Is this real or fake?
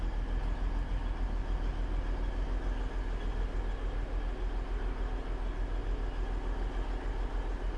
real